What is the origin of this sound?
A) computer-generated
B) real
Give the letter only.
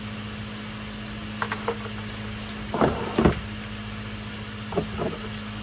B